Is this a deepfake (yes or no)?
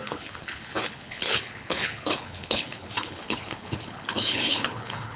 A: yes